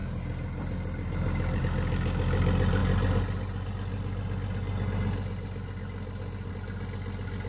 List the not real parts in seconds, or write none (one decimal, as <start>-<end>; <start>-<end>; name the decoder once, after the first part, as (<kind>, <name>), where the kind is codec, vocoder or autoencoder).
none